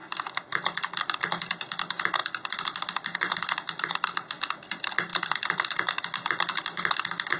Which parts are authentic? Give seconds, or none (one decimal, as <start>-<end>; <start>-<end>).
0.0-2.2; 3.9-5.1; 6.9-7.4